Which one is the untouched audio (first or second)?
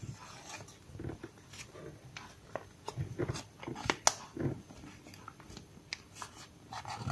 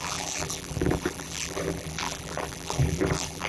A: first